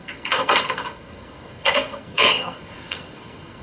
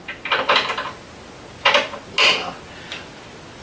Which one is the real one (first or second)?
second